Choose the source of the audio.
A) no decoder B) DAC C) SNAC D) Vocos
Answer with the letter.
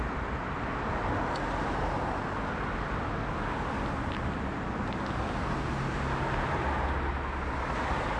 A